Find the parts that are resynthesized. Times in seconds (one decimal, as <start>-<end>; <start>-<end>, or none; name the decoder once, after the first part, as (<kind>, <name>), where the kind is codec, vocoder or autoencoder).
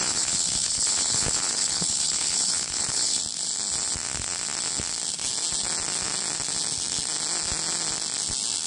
0.0-3.2 (codec, HILCodec)